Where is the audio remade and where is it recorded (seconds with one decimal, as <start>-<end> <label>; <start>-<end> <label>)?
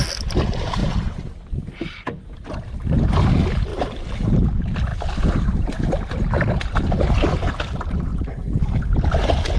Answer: 0.0-0.8 remade; 0.8-2.5 recorded; 2.5-3.7 remade; 3.7-4.2 recorded; 4.2-4.9 remade; 4.9-6.6 recorded; 6.6-8.1 remade; 8.1-9.6 recorded